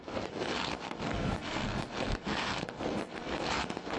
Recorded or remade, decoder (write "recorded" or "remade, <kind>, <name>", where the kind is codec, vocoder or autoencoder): remade, codec, SNAC